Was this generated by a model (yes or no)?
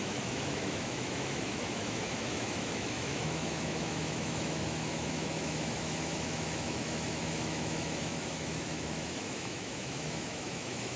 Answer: yes